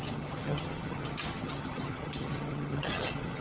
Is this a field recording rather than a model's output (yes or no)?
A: no